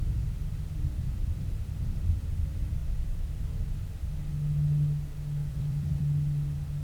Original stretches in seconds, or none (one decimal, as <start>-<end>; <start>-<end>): 0.0-2.8; 3.4-5.4; 6.0-6.8